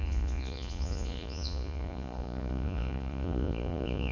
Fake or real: fake